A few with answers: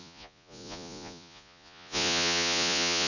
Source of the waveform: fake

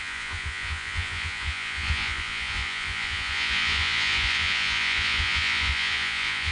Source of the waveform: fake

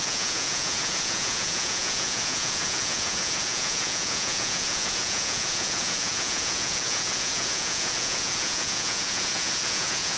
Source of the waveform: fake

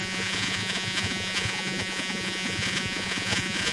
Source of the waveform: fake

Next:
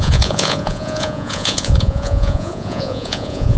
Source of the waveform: fake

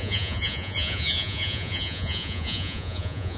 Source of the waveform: fake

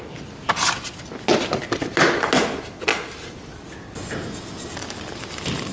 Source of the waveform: real